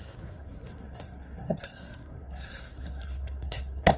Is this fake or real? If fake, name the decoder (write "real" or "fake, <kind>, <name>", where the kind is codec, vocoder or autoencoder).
fake, codec, SNAC